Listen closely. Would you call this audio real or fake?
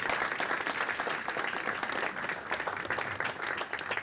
real